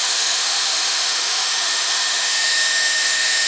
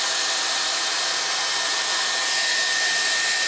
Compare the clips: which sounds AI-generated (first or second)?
first